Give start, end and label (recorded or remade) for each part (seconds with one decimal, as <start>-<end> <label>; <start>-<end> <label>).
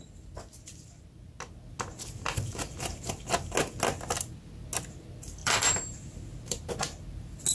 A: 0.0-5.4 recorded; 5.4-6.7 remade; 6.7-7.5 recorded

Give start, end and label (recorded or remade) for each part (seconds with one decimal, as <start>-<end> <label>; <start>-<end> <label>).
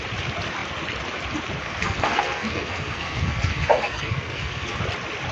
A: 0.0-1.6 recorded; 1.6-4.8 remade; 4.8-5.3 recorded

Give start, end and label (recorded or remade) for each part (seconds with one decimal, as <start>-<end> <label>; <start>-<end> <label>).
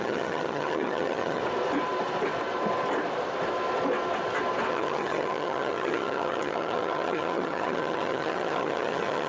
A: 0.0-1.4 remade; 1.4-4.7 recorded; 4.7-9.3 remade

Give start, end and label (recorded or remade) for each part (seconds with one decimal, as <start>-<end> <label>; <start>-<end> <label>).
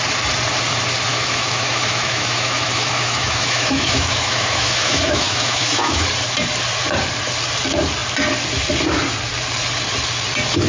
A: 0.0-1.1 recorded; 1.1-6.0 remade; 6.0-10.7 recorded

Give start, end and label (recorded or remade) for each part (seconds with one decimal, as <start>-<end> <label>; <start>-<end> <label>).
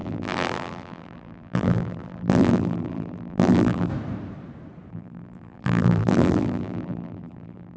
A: 0.0-3.9 remade; 3.9-4.9 recorded; 4.9-7.8 remade